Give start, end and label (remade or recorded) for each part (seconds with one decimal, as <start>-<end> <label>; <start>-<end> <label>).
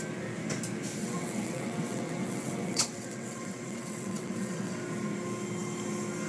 0.0-1.0 recorded; 1.0-4.8 remade; 4.8-6.3 recorded